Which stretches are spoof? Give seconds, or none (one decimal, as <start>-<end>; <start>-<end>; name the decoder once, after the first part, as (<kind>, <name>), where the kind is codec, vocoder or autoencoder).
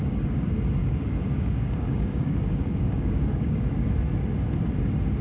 0.8-3.9 (codec, DAC)